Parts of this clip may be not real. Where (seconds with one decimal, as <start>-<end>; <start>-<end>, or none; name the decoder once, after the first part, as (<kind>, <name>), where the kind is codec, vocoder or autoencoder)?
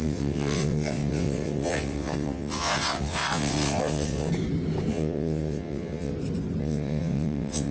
0.0-4.3 (vocoder, WaveNeXt); 4.9-6.1; 6.6-7.7